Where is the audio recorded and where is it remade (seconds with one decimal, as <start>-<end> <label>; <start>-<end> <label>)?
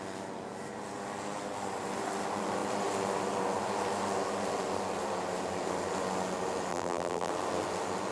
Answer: 0.0-6.7 recorded; 6.7-7.3 remade; 7.3-8.1 recorded